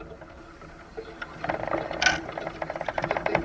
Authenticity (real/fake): real